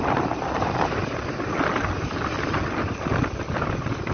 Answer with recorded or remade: recorded